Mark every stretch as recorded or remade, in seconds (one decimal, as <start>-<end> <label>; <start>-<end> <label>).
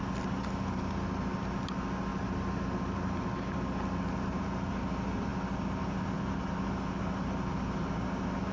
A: 0.0-8.5 recorded